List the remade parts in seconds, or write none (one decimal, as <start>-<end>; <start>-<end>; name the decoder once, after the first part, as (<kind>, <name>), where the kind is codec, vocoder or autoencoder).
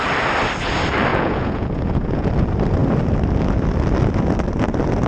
1.1-2.3 (vocoder, Vocos)